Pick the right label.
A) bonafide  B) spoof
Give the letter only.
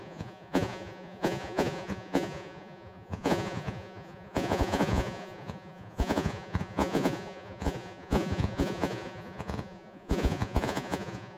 B